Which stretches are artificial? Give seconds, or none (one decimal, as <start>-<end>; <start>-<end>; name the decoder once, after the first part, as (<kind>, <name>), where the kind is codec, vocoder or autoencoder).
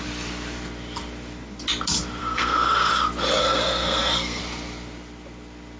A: 2.2-2.9 (codec, SNAC); 3.4-4.4